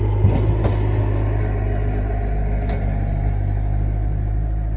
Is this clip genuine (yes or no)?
yes